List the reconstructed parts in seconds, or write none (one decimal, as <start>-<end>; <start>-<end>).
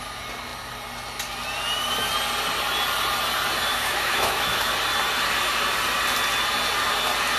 3.7-4.7